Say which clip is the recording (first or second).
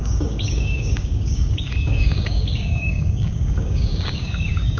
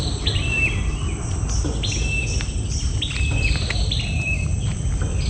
second